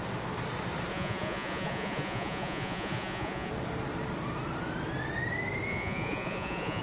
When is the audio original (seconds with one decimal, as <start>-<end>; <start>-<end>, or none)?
0.0-0.9; 3.5-5.7